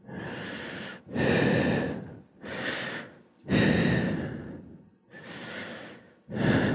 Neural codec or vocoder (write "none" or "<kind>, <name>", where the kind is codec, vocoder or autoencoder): none